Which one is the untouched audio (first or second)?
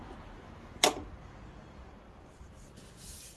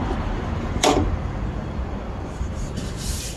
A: first